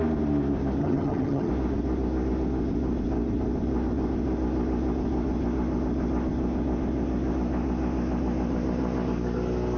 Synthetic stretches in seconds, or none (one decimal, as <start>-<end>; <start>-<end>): 0.8-1.5